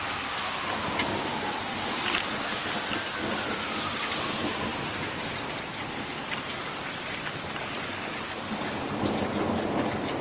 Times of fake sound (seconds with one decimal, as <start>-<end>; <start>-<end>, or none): none